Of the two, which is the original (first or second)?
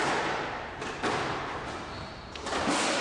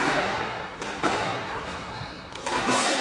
first